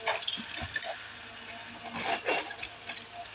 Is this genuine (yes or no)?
yes